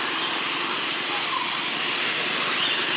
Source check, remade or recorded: recorded